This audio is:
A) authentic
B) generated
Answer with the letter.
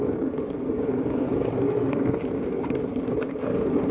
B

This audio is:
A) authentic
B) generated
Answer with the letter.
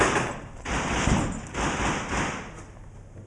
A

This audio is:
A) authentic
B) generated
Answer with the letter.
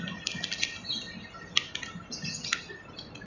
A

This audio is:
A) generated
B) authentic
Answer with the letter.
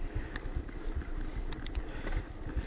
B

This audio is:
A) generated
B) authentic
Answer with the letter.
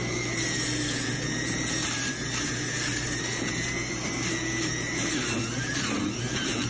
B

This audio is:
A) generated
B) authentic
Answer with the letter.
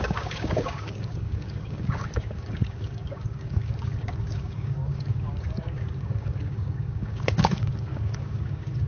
A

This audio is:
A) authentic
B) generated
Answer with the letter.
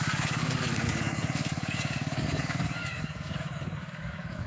B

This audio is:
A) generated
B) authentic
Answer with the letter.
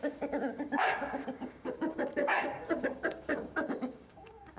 A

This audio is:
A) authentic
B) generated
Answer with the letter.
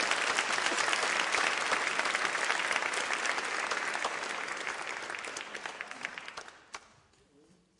A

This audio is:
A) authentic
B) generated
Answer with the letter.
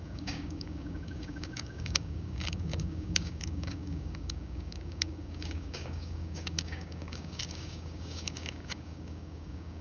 B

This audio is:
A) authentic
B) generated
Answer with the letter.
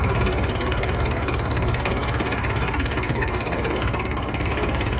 B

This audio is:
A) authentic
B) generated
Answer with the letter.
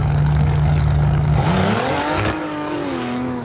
B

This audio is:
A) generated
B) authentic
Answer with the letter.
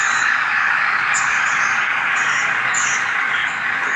A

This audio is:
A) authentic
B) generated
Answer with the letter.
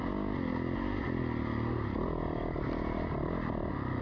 A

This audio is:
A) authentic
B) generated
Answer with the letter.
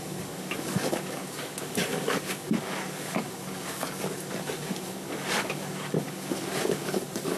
B